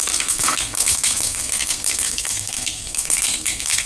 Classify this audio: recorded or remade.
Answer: remade